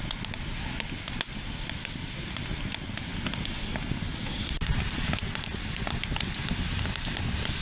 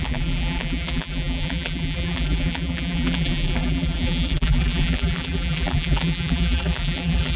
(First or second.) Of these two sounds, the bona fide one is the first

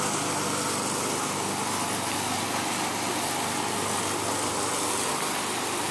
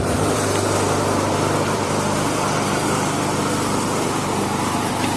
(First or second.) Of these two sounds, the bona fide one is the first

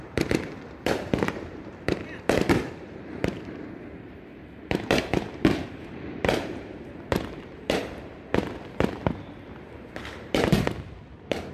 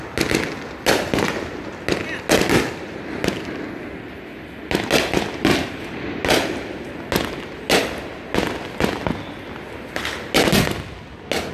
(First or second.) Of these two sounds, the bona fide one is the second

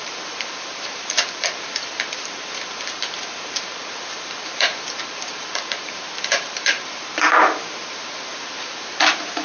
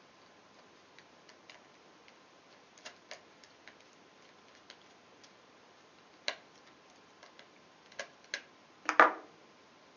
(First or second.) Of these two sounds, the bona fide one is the second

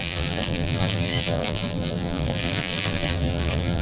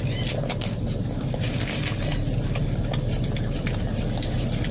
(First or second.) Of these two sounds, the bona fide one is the second